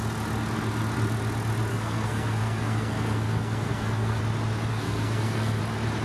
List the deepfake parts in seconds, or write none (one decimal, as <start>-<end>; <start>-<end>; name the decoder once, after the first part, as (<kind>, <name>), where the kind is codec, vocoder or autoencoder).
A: 1.7-4.2 (codec, SNAC); 4.7-5.6